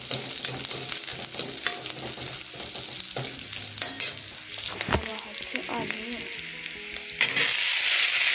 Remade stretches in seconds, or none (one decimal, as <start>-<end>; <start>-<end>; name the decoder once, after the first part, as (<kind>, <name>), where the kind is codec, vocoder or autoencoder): none